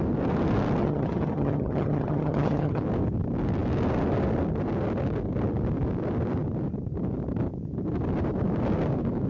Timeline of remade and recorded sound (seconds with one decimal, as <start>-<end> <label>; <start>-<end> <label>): 0.0-0.8 recorded; 0.8-2.8 remade; 2.8-9.3 recorded